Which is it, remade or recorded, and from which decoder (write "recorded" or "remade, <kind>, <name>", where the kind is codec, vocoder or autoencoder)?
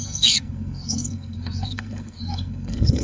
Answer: remade, codec, SNAC